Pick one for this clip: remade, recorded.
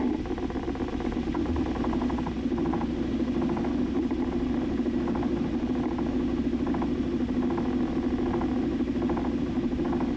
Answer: recorded